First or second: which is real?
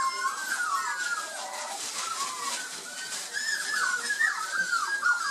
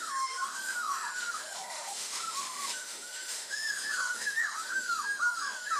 first